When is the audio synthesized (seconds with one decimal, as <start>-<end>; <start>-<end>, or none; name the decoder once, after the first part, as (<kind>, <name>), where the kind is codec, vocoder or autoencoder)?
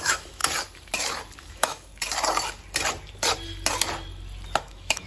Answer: 0.0-0.4 (autoencoder, DAC-VAE); 1.4-1.9; 4.6-5.1